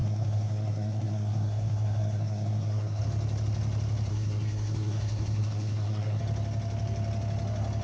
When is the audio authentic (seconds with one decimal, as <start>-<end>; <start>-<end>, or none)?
3.0-4.1; 6.2-7.8